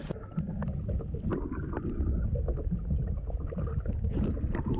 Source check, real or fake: real